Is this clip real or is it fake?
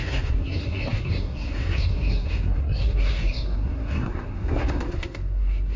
fake